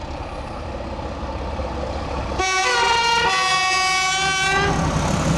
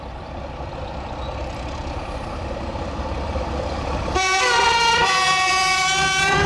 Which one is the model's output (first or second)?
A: second